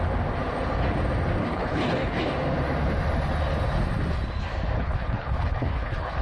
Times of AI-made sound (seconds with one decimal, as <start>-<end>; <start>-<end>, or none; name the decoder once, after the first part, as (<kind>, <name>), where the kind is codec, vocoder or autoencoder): 1.4-2.2 (codec, HILCodec); 4.8-6.2